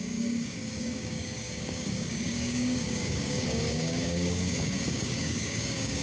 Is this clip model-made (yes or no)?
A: yes